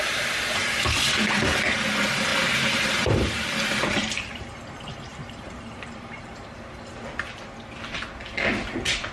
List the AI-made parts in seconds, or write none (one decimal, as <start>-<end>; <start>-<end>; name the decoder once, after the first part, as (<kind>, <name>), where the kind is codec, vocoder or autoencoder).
2.3-4.4 (vocoder, BigVGAN v2); 5.1-6.4